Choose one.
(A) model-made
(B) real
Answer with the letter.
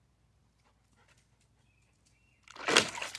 B